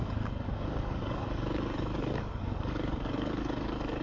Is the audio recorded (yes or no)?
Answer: no